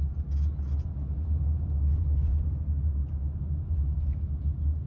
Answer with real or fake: real